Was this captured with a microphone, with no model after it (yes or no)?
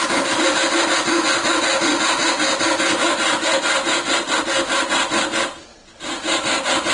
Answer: yes